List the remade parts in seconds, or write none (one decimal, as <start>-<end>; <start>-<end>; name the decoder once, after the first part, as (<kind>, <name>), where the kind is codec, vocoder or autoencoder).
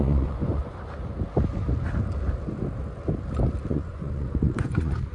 0.0-0.6 (vocoder, Vocos); 3.7-5.1